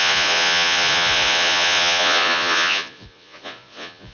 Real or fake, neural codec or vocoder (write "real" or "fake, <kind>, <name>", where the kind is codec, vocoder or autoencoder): fake, vocoder, Vocos